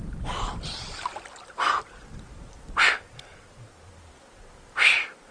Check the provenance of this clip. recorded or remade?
recorded